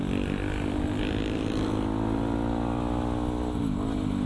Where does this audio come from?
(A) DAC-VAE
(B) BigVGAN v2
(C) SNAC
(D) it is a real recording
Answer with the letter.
D